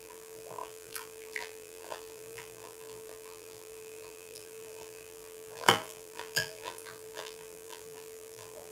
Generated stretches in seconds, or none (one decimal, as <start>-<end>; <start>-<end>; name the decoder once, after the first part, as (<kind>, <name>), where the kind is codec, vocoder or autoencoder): 0.0-8.7 (vocoder, BigVGAN v2)